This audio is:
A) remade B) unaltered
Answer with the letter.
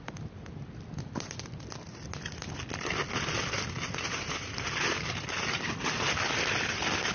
B